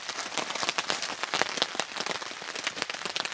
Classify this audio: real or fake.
fake